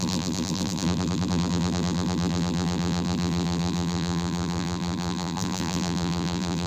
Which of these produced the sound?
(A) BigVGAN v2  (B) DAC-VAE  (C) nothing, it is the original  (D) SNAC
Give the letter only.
A